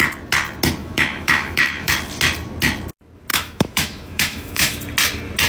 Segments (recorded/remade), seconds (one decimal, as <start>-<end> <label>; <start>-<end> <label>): 0.0-0.8 recorded; 0.8-1.9 remade; 1.9-3.3 recorded; 3.3-4.8 remade; 4.8-5.5 recorded